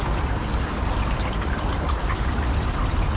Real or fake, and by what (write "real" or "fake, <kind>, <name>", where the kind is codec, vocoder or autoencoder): real